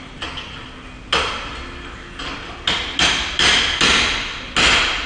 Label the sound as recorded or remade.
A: recorded